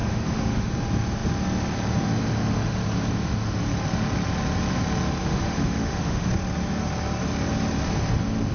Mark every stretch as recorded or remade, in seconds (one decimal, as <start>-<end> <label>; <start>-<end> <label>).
0.0-0.7 remade; 0.7-5.2 recorded; 5.2-6.3 remade; 6.3-8.5 recorded